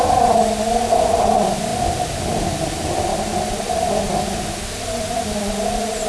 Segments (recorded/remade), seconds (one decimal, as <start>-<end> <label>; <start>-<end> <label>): 0.0-6.1 recorded